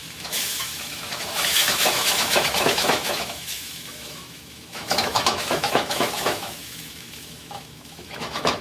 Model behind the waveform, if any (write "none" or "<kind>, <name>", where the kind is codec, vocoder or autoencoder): autoencoder, DAC-VAE